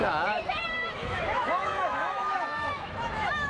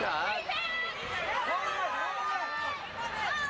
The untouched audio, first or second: second